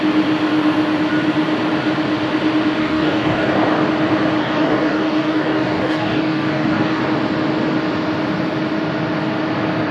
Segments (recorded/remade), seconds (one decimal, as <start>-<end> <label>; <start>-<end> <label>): 0.0-2.8 recorded; 2.8-3.5 remade; 3.5-4.4 recorded; 4.4-7.0 remade; 7.0-9.9 recorded